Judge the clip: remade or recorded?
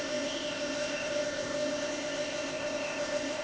remade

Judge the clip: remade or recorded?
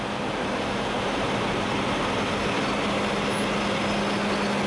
recorded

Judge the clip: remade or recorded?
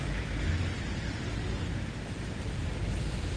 recorded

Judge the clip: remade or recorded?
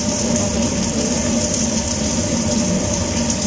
recorded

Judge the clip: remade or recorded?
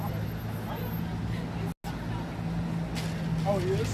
recorded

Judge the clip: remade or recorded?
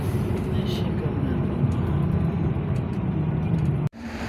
remade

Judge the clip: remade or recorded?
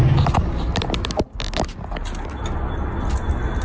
recorded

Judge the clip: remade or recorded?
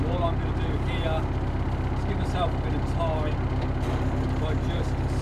recorded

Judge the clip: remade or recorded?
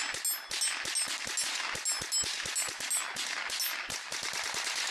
recorded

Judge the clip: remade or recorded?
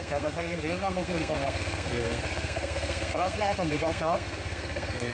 remade